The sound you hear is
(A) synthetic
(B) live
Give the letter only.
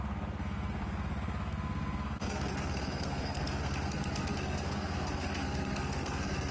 A